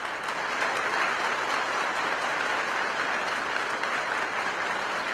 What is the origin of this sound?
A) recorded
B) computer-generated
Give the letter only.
A